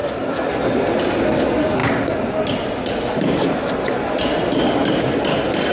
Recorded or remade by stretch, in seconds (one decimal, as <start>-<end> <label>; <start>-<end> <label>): 0.0-5.7 recorded